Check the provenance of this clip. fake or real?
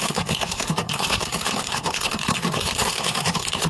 fake